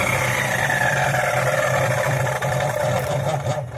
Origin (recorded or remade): remade